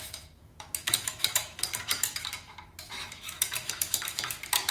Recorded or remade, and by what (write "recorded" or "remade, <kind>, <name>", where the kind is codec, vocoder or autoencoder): remade, autoencoder, DAC-VAE